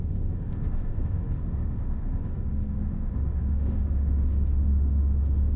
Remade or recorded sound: remade